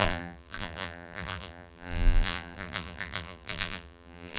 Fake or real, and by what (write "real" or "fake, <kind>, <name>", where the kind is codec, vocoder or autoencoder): fake, vocoder, BigVGAN v2